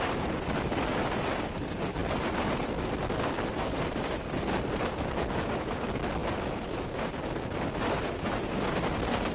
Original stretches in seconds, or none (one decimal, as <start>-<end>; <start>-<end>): 0.0-9.3